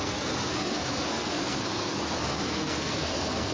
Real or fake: fake